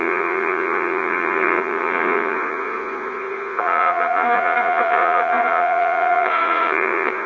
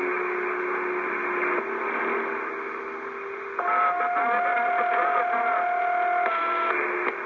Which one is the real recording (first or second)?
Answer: second